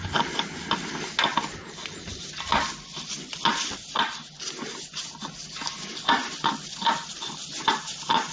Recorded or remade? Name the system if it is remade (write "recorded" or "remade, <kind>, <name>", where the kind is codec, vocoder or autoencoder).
recorded